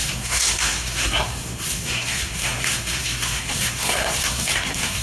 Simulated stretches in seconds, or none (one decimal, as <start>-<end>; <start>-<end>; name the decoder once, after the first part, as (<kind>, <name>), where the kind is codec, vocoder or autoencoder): 0.0-5.0 (codec, SNAC)